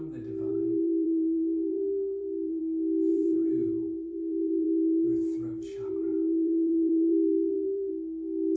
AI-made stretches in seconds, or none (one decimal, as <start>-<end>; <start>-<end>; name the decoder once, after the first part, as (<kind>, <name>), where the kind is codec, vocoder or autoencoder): 0.5-2.6 (vocoder, BigVGAN v2); 3.1-7.9